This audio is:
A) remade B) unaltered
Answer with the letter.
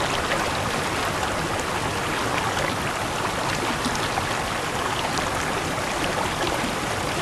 B